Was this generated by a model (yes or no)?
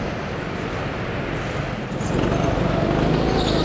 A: no